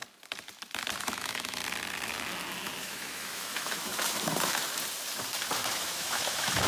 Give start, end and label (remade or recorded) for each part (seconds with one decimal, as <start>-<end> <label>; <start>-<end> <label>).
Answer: 0.0-1.0 recorded; 1.0-1.6 remade; 1.6-2.8 recorded; 2.8-3.9 remade; 3.9-5.7 recorded; 5.7-6.7 remade